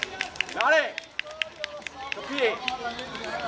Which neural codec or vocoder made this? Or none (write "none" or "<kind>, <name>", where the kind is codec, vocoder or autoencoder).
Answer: none